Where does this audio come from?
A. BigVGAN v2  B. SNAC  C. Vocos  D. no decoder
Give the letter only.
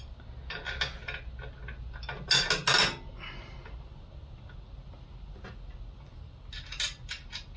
D